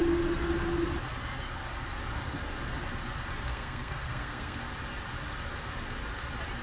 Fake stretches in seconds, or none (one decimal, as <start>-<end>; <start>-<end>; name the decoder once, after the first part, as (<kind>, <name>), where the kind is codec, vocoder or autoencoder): 3.5-4.6 (codec, SNAC)